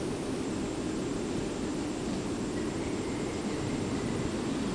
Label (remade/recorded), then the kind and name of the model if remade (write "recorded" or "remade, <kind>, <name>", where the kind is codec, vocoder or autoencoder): recorded